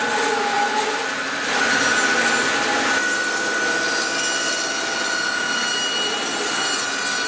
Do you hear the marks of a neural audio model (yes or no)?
no